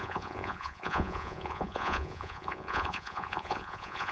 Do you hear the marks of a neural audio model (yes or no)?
yes